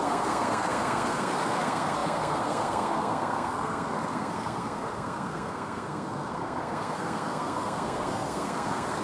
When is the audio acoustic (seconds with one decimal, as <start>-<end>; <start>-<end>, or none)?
none